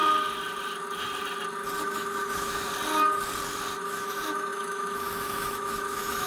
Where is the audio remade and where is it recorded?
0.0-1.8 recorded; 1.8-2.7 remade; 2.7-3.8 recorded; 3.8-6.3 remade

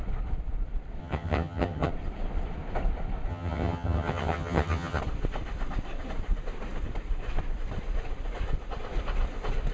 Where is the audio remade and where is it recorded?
0.0-1.0 recorded; 1.0-1.9 remade; 1.9-3.3 recorded; 3.3-5.0 remade; 5.0-9.7 recorded

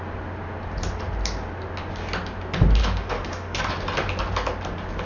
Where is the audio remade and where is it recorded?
0.0-2.8 recorded; 2.8-3.6 remade; 3.6-5.1 recorded

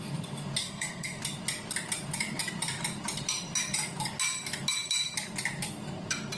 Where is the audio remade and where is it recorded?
0.0-0.6 recorded; 0.6-1.2 remade; 1.2-6.4 recorded

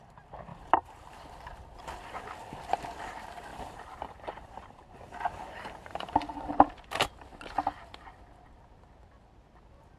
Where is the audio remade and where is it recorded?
0.0-0.5 recorded; 0.5-1.1 remade; 1.1-3.5 recorded; 3.5-6.5 remade; 6.5-10.0 recorded